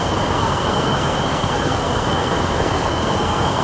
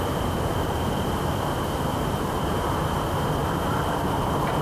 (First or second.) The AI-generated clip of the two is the first